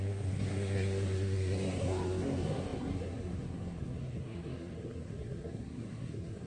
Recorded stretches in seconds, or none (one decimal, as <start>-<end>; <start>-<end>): none

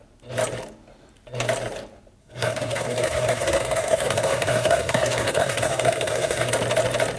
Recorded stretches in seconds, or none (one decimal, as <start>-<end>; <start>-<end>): 0.0-2.2; 6.5-7.2

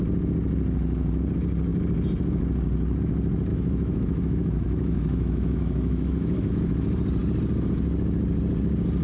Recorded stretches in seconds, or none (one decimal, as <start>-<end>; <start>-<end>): 0.0-3.5; 6.5-9.0